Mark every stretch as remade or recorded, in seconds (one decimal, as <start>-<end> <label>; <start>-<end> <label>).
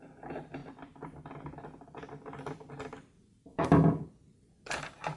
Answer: 0.0-3.5 recorded; 3.5-4.0 remade; 4.0-5.2 recorded